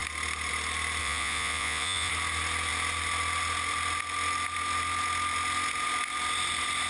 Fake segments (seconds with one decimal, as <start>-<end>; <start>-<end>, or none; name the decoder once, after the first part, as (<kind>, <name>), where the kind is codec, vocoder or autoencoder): 1.0-2.1 (vocoder, Vocos)